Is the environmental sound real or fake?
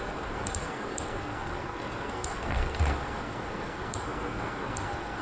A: fake